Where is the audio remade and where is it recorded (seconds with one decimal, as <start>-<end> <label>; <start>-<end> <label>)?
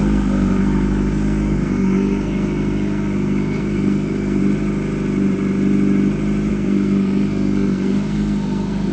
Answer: 0.0-4.4 remade; 4.4-6.5 recorded; 6.5-8.9 remade